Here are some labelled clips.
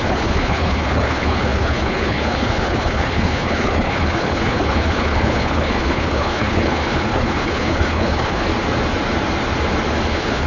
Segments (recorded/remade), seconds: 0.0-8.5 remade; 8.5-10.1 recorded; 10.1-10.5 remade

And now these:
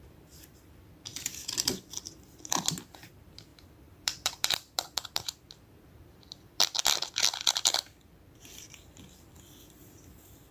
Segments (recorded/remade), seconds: 0.0-10.5 remade

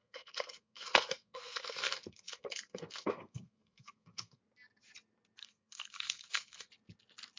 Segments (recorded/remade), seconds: 0.0-4.4 remade; 4.4-5.4 recorded; 5.4-6.7 remade; 6.7-7.4 recorded

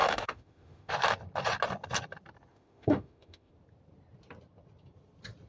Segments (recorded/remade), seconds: 0.0-0.9 remade; 0.9-2.5 recorded; 2.5-3.5 remade; 3.5-5.5 recorded

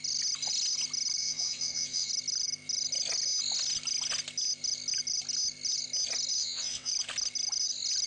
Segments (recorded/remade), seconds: 0.0-1.2 recorded; 1.2-2.1 remade; 2.1-6.4 recorded; 6.4-6.9 remade; 6.9-8.1 recorded